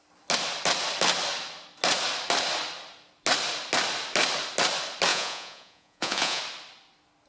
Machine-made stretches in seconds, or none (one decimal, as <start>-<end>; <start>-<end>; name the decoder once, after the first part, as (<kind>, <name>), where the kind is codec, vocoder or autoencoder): 5.1-6.4 (vocoder, Vocos)